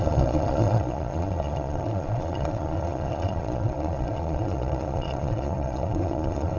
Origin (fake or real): fake